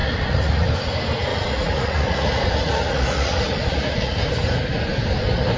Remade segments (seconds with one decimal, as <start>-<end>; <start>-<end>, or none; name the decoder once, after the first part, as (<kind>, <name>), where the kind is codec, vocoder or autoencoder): 0.0-0.7 (vocoder, Vocos); 1.3-4.2